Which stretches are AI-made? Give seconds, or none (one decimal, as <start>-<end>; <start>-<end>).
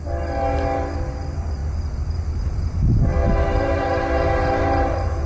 none